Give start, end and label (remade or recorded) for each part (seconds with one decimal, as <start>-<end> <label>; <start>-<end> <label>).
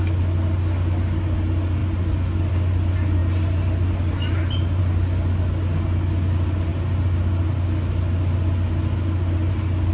0.0-9.9 recorded